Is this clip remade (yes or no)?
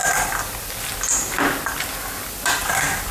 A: no